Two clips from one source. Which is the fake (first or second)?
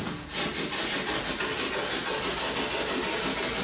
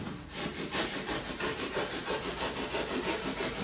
second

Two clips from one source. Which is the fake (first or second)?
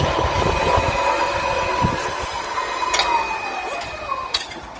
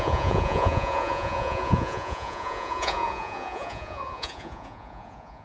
second